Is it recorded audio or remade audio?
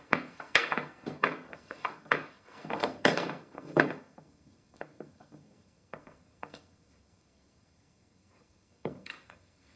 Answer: remade